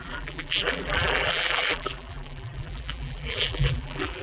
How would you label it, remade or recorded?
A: remade